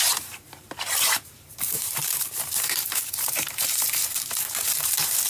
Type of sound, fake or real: fake